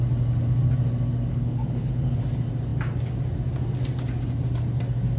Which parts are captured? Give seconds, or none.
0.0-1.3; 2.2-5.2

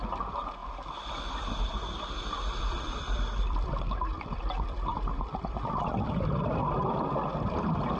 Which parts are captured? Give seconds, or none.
0.6-2.6